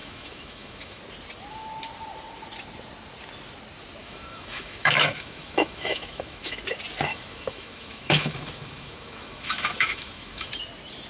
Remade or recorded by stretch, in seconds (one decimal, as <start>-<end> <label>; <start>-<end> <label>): 0.0-1.0 remade; 1.0-4.0 recorded; 4.0-6.6 remade; 6.6-7.1 recorded; 7.1-10.5 remade; 10.5-11.1 recorded